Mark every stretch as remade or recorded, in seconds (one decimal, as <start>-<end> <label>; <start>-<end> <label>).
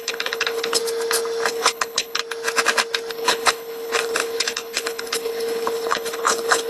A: 0.0-0.8 remade; 0.8-1.5 recorded; 1.5-2.2 remade; 2.2-3.1 recorded; 3.1-6.7 remade